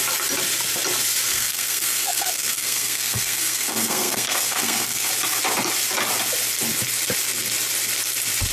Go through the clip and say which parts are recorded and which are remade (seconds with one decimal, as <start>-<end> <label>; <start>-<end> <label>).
0.0-1.3 recorded; 1.3-5.1 remade; 5.1-8.5 recorded